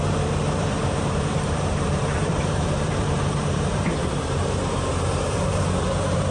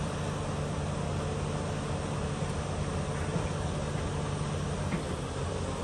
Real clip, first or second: second